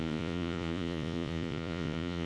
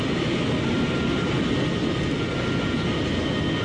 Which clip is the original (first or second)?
second